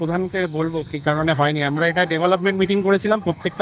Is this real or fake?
fake